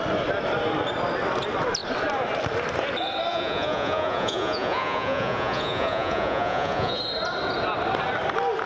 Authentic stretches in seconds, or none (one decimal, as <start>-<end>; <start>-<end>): 0.0-3.3; 7.0-8.7